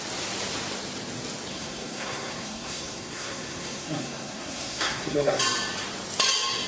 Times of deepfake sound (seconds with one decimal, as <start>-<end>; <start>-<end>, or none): 1.5-5.4